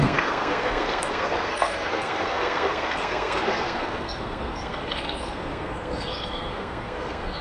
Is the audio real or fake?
fake